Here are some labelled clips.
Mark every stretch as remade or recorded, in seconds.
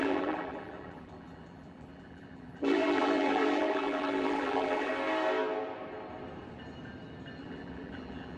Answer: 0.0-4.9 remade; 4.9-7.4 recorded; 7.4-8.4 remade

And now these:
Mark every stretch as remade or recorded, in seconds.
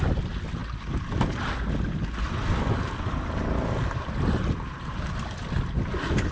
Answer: 0.0-6.3 recorded